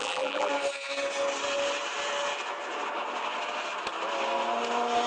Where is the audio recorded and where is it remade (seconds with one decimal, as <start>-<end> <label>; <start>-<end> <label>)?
0.0-0.5 remade; 0.5-5.1 recorded